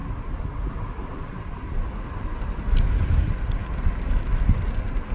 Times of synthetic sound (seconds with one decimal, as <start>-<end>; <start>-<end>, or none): none